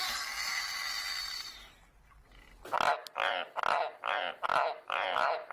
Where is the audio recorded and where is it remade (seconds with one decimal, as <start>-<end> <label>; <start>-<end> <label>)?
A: 0.0-5.5 recorded